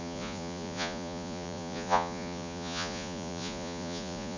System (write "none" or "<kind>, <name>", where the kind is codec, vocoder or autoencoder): vocoder, Vocos